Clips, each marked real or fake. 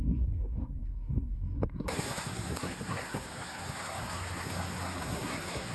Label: fake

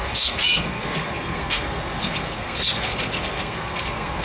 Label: fake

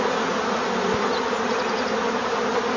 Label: real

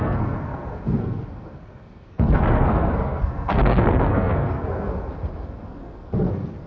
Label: fake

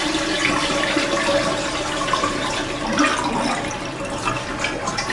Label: real